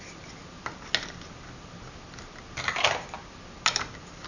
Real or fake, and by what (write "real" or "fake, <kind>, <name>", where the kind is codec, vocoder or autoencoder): real